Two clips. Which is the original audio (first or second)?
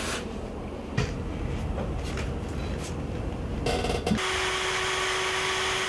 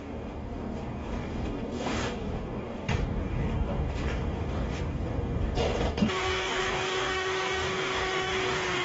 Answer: first